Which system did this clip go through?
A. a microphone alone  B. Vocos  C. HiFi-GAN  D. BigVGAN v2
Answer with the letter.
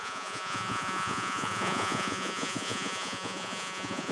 B